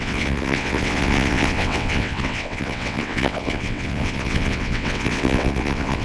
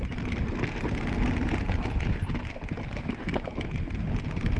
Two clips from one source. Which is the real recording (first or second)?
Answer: second